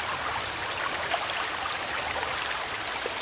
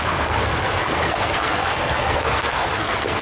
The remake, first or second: second